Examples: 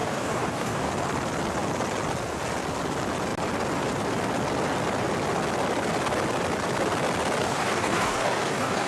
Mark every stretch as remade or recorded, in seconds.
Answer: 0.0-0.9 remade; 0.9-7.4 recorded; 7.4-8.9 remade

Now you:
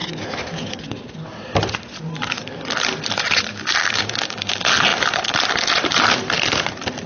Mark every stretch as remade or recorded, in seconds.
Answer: 0.0-3.8 recorded; 3.8-4.5 remade; 4.5-7.1 recorded

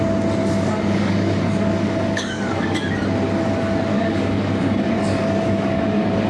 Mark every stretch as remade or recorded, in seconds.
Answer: 0.0-0.4 recorded; 0.4-2.9 remade; 2.9-3.9 recorded; 3.9-6.3 remade

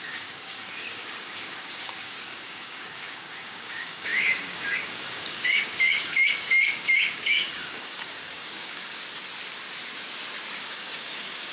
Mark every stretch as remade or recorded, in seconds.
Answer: 0.0-9.0 remade; 9.0-10.6 recorded; 10.6-11.5 remade

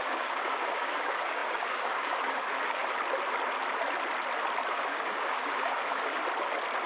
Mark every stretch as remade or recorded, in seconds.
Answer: 0.0-2.8 remade; 2.8-4.7 recorded; 4.7-6.2 remade; 6.2-6.9 recorded

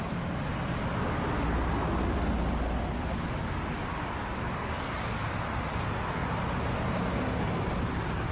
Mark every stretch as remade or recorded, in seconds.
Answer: 0.0-4.2 recorded; 4.2-4.9 remade; 4.9-8.3 recorded